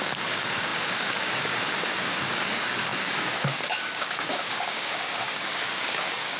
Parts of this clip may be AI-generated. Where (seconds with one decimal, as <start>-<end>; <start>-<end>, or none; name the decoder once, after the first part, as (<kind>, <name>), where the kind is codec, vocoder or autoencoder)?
0.0-6.4 (codec, DAC)